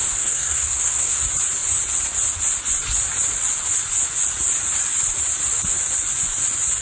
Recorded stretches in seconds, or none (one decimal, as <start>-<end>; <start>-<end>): 1.2-6.8